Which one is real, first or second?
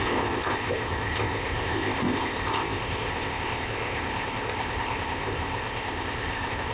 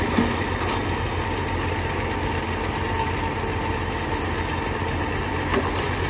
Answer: second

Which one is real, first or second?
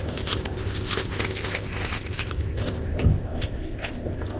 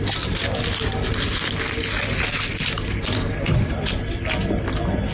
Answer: second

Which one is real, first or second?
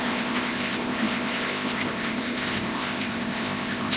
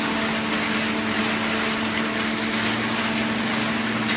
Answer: second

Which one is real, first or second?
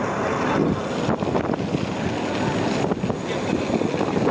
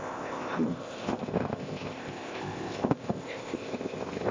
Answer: first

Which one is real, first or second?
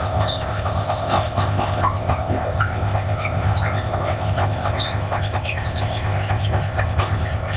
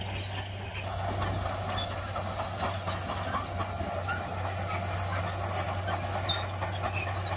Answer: second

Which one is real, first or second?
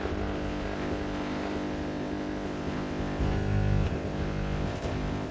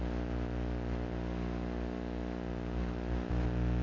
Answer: second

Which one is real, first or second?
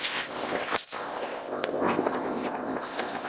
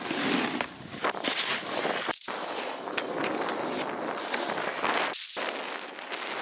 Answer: second